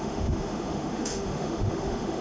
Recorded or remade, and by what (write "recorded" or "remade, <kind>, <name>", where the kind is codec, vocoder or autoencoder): remade, autoencoder, DAC-VAE